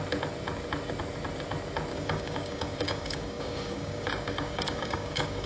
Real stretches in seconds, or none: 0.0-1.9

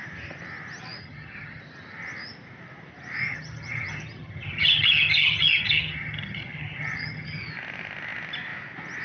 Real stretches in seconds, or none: 0.0-1.0; 1.6-3.2; 7.5-9.0

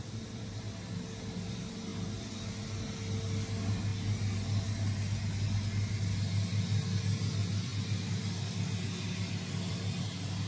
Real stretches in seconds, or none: 0.0-10.5

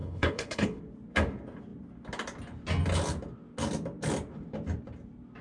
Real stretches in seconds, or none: 0.8-5.4

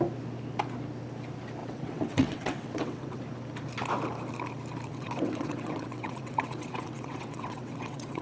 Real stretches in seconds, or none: 0.0-1.6; 3.2-4.9